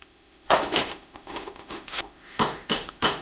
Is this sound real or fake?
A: fake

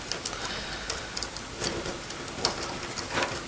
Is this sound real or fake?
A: real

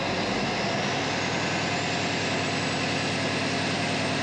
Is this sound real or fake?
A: real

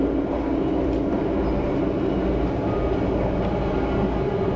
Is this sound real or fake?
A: real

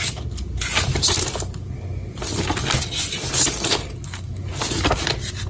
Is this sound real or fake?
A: real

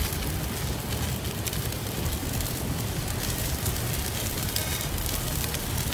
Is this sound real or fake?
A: real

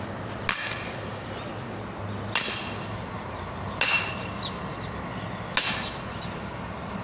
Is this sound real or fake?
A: real